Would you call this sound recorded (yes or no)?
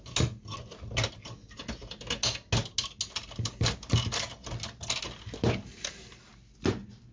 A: yes